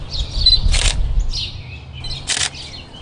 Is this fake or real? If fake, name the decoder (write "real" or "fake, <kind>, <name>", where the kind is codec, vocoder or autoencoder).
real